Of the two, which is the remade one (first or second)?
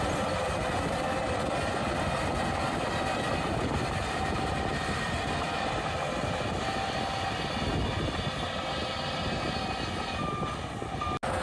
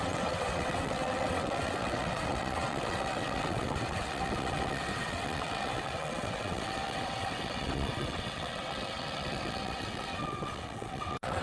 second